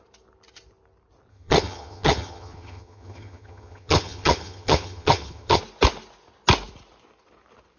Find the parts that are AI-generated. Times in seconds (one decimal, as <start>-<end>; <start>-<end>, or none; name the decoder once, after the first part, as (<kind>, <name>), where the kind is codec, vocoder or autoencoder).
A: 1.3-5.6 (vocoder, HiFi-GAN)